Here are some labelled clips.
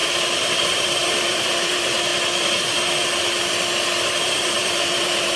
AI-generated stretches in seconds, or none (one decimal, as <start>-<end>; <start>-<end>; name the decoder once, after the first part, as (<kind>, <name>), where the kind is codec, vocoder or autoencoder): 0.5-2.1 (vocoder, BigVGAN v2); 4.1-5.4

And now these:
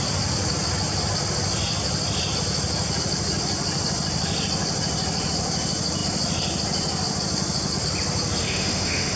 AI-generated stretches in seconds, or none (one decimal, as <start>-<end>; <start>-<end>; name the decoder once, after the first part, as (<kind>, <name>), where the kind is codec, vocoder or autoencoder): 8.4-9.2 (autoencoder, DAC-VAE)

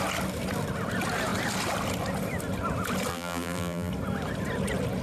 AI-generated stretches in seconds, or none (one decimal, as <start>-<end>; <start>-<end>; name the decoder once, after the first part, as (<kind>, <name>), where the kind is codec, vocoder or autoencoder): 3.1-3.9 (vocoder, BigVGAN v2)

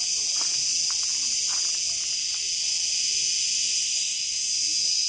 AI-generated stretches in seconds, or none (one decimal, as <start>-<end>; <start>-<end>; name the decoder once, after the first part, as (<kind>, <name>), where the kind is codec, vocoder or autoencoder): none

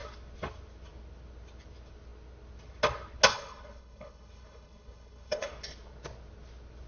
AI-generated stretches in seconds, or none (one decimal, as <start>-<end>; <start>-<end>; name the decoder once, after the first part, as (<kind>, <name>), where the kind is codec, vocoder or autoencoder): 3.3-5.5 (codec, HILCodec)

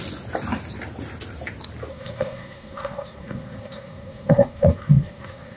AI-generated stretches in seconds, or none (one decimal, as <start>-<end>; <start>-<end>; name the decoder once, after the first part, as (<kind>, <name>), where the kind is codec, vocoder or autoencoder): 1.9-5.6 (codec, SNAC)